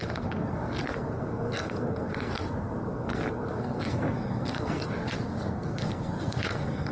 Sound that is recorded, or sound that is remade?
remade